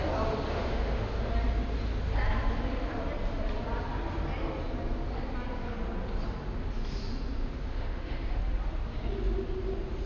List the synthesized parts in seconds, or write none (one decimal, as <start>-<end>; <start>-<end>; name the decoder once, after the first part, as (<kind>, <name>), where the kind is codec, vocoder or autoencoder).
0.5-1.3 (autoencoder, DAC-VAE); 7.4-8.4